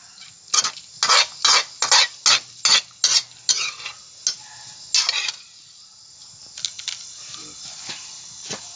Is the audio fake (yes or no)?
no